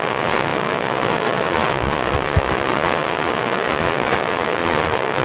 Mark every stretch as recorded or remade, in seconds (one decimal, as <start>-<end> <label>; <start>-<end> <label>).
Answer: 0.0-5.2 remade